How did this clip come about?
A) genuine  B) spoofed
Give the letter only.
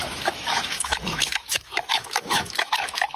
B